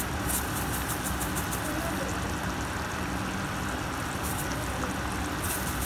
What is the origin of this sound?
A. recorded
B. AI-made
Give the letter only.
A